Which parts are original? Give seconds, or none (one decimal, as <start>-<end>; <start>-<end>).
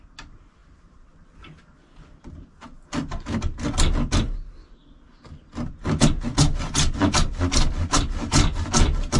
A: 0.0-9.2